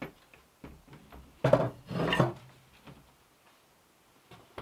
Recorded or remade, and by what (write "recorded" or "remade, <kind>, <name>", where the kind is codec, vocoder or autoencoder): recorded